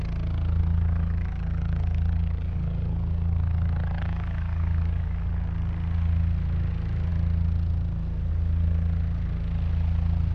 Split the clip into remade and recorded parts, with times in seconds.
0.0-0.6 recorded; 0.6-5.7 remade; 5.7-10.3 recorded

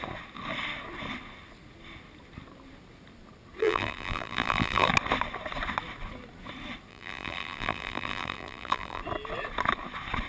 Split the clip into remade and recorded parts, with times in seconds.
0.0-3.6 recorded; 3.6-4.9 remade; 4.9-6.9 recorded; 6.9-9.0 remade; 9.0-10.3 recorded

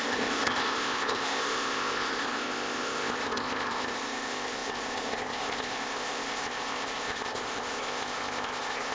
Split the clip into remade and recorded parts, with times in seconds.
0.0-8.9 remade

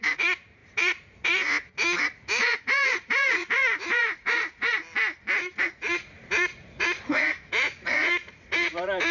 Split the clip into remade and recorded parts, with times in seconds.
0.0-4.8 remade; 4.8-5.5 recorded; 5.5-9.1 remade